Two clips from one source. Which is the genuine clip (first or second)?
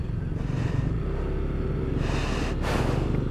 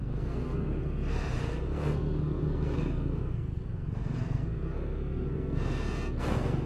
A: first